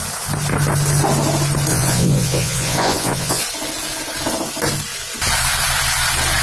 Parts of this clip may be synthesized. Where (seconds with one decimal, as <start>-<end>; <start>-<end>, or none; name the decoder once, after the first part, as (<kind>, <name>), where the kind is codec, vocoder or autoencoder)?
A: 1.7-3.4 (vocoder, Vocos)